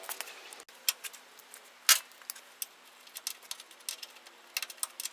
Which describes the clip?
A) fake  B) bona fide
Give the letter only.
B